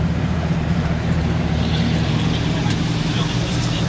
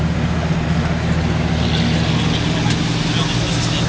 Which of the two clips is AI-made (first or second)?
first